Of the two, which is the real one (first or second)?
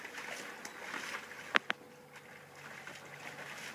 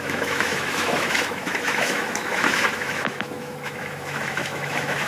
first